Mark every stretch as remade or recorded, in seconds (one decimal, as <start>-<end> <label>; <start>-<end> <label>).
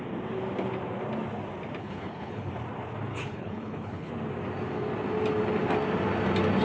0.0-1.8 recorded; 1.8-2.5 remade; 2.5-3.1 recorded; 3.1-4.1 remade; 4.1-6.6 recorded